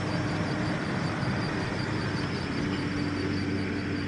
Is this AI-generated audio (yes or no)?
no